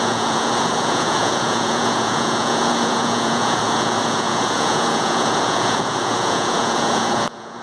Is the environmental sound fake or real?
fake